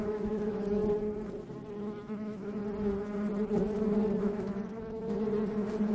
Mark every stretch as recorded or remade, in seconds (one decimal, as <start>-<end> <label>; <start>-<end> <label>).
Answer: 0.0-0.8 remade; 0.8-1.8 recorded; 1.8-2.6 remade; 2.6-4.2 recorded; 4.2-5.3 remade; 5.3-5.9 recorded

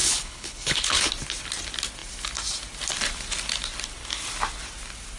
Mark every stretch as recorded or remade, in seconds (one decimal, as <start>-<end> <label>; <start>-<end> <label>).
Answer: 0.0-1.1 remade; 1.1-5.2 recorded

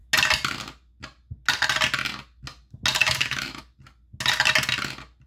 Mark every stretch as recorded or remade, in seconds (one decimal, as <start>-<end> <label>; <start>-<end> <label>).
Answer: 0.0-3.0 recorded; 3.0-3.6 remade; 3.6-5.3 recorded

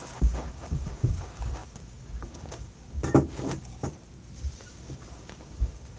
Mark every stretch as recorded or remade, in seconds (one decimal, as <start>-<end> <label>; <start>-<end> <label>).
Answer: 0.0-3.9 remade; 3.9-4.7 recorded; 4.7-6.0 remade

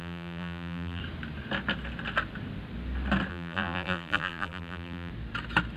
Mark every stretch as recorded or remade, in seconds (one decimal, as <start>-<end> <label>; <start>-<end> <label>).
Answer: 0.0-1.0 remade; 1.0-3.3 recorded; 3.3-5.1 remade; 5.1-5.8 recorded

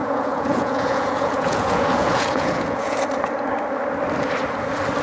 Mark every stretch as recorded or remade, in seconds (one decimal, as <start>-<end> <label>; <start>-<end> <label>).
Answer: 0.0-3.0 remade; 3.0-5.0 recorded

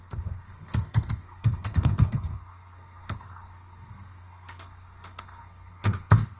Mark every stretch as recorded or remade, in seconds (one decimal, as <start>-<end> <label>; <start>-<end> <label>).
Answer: 0.0-6.4 remade

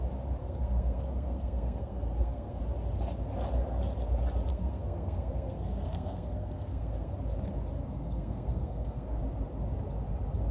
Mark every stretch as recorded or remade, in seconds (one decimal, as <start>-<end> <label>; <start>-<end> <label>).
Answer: 0.0-0.4 recorded; 0.4-2.6 remade; 2.6-4.5 recorded; 4.5-7.1 remade; 7.1-7.8 recorded; 7.8-9.2 remade; 9.2-10.5 recorded